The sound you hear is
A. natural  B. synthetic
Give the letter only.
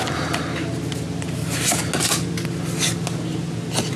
A